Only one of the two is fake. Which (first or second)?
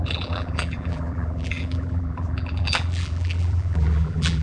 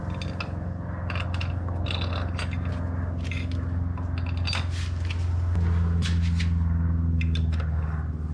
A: first